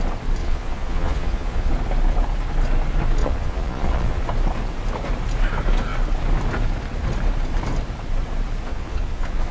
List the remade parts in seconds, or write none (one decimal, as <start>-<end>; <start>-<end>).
0.4-1.7; 3.2-4.2; 8.7-9.5